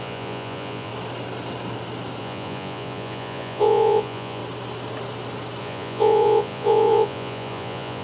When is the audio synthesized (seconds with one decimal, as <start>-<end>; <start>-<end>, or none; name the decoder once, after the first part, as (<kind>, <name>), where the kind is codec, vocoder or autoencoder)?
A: 0.0-0.9 (vocoder, Vocos); 2.2-4.4; 5.6-8.0